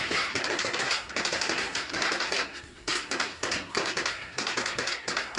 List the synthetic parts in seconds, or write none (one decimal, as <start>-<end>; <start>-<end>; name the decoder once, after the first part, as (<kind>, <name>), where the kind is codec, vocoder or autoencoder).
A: 0.0-5.4 (codec, SNAC)